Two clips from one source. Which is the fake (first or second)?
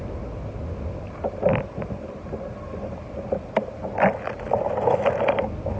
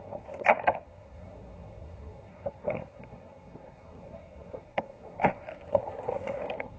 second